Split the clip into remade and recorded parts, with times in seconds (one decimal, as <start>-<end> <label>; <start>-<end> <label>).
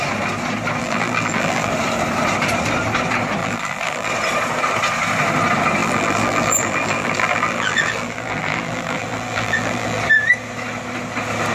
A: 0.0-0.8 recorded; 0.8-1.7 remade; 1.7-3.4 recorded; 3.4-4.1 remade; 4.1-5.8 recorded; 5.8-10.0 remade; 10.0-11.5 recorded